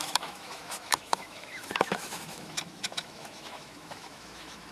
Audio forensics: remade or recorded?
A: remade